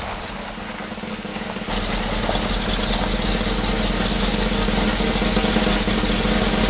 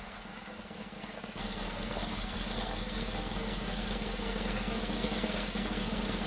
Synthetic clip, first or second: second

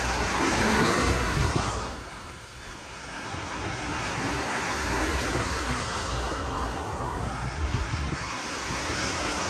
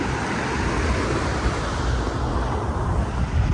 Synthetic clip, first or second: first